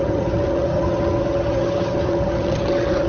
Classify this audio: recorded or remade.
remade